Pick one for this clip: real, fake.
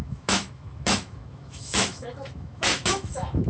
fake